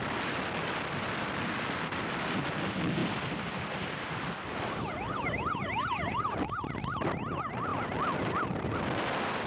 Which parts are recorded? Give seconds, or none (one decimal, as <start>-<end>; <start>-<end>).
0.0-3.0; 6.4-7.7; 8.3-9.5